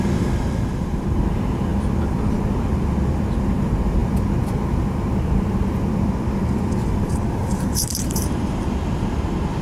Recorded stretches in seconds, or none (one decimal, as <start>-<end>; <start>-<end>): 0.0-7.4; 8.6-9.6